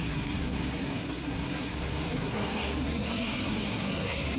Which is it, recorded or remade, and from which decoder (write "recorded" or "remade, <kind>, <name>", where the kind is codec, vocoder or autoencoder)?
remade, codec, SNAC